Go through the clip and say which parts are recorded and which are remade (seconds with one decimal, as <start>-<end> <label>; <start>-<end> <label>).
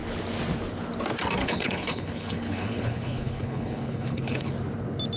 0.0-1.4 recorded; 1.4-4.5 remade; 4.5-5.2 recorded